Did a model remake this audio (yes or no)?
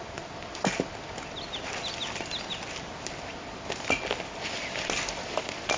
no